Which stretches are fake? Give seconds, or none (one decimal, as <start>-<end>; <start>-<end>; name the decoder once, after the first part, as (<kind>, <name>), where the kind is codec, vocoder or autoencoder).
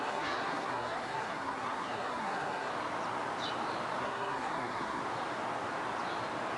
0.0-2.7 (codec, SNAC); 4.0-5.0